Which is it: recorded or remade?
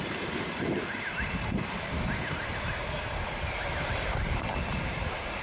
remade